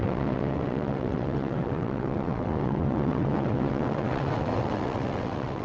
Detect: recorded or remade remade